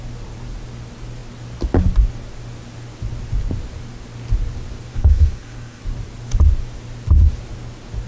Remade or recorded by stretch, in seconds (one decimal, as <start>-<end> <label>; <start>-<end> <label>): 0.0-4.9 recorded; 4.9-5.8 remade; 5.8-8.1 recorded